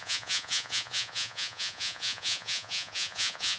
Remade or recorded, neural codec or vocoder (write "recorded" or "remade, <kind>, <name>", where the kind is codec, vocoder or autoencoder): remade, vocoder, Vocos